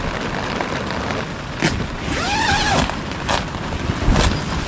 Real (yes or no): yes